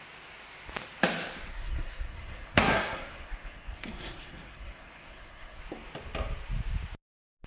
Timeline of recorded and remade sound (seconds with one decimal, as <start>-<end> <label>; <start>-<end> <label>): 0.0-1.5 recorded; 1.5-5.6 remade; 5.6-7.5 recorded